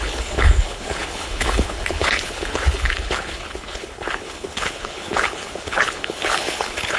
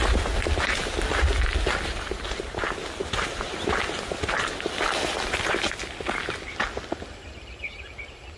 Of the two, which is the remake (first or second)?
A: first